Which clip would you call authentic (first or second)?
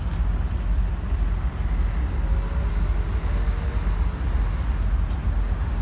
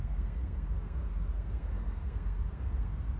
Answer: first